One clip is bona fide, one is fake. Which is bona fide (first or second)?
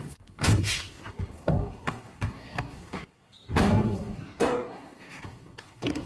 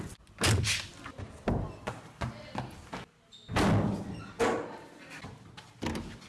second